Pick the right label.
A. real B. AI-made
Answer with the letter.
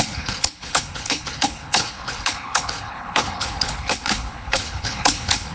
B